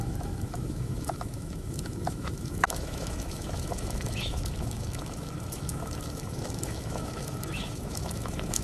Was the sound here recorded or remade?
remade